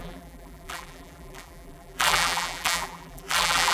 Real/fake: fake